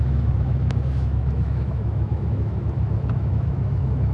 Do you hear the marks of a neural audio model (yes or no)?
yes